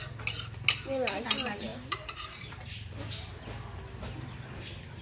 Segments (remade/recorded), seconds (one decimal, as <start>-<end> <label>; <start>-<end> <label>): 0.0-5.0 recorded